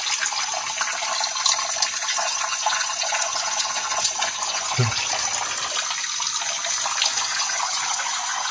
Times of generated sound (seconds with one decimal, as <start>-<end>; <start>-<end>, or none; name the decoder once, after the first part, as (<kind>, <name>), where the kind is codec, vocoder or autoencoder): 2.1-5.1 (vocoder, Vocos); 7.1-8.5